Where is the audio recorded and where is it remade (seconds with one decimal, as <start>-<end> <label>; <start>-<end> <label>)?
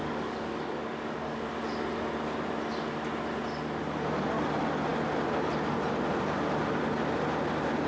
0.0-1.5 remade; 1.5-7.9 recorded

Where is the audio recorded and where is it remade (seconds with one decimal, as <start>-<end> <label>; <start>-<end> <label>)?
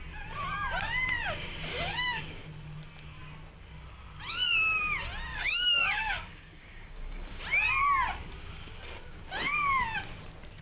0.0-1.7 recorded; 1.7-2.2 remade; 2.2-5.3 recorded; 5.3-7.4 remade; 7.4-10.6 recorded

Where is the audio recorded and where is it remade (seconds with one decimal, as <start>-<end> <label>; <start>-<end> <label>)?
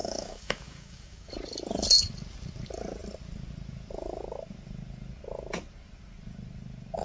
0.0-1.3 remade; 1.3-7.0 recorded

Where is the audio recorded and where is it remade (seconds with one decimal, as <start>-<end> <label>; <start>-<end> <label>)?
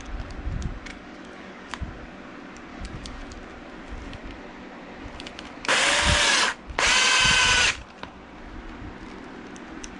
0.0-0.9 recorded; 0.9-1.8 remade; 1.8-2.7 recorded; 2.7-3.3 remade; 3.3-10.0 recorded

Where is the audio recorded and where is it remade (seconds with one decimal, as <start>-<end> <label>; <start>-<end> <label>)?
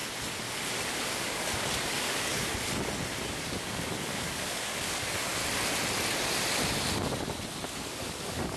0.0-0.9 recorded; 0.9-2.5 remade; 2.5-3.2 recorded; 3.2-5.4 remade; 5.4-7.8 recorded; 7.8-8.6 remade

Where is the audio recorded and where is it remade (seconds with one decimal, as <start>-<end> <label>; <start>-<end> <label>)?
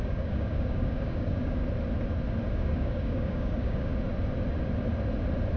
0.0-1.6 remade; 1.6-2.5 recorded; 2.5-3.9 remade; 3.9-5.6 recorded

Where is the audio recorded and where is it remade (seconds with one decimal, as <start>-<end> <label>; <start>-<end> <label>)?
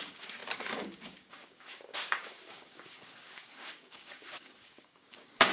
0.0-5.5 remade